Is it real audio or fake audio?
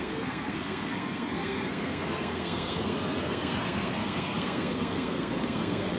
fake